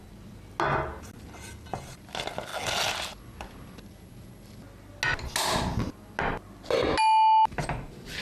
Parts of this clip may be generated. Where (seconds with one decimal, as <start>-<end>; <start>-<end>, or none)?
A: none

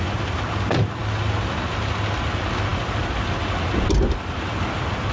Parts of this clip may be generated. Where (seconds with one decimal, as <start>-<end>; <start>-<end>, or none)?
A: none

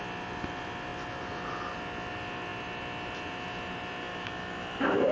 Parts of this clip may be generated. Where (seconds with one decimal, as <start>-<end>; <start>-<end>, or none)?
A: 4.1-4.6

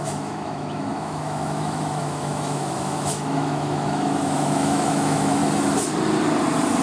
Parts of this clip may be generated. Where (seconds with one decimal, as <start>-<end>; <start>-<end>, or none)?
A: 0.0-5.4

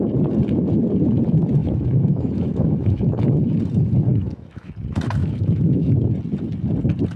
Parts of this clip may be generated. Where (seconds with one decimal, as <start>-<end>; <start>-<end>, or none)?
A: 1.6-3.0; 4.1-4.7; 5.2-6.1

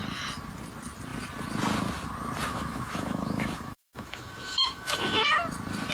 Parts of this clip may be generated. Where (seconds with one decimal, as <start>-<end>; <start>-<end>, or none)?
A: 2.5-5.3

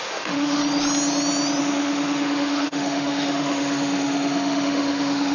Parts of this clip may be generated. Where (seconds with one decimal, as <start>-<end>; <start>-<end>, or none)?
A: 0.0-0.6; 1.6-5.3

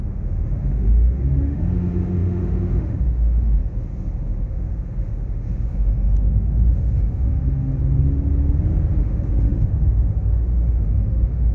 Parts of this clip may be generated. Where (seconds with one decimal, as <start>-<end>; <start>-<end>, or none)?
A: 0.0-7.7; 9.0-11.5